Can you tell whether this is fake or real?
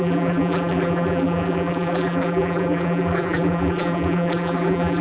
fake